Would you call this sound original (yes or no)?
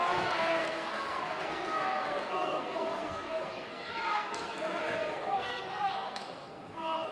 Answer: no